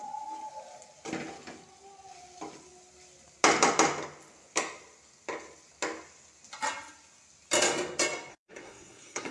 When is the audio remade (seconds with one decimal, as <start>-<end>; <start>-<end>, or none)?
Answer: 8.3-9.3